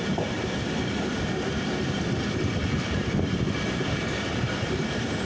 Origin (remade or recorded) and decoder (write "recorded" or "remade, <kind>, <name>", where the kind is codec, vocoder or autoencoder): remade, vocoder, BigVGAN v2